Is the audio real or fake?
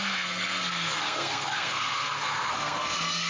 fake